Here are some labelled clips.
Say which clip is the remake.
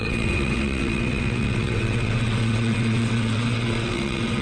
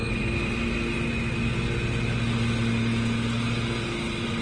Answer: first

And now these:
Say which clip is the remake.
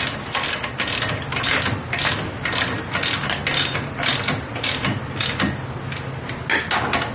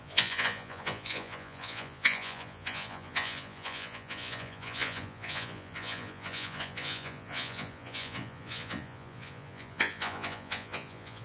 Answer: second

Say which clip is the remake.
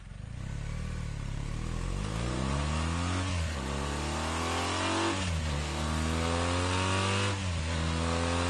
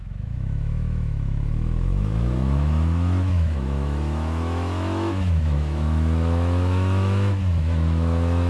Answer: second